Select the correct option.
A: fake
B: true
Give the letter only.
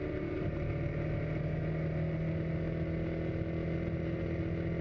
B